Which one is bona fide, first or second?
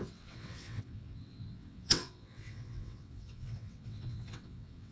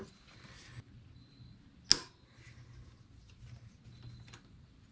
second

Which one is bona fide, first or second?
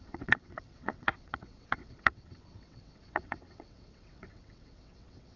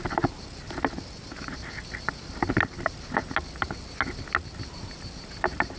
second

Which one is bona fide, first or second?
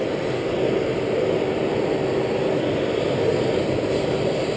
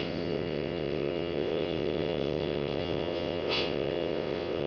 first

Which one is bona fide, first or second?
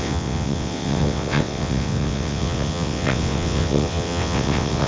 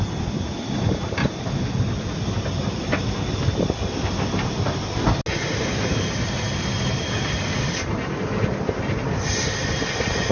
second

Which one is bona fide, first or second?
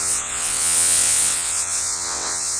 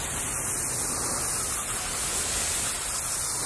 second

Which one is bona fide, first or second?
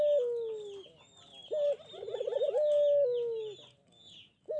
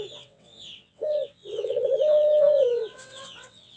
first